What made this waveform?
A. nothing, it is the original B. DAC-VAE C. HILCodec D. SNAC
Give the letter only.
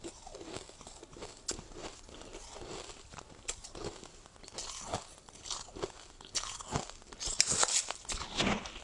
A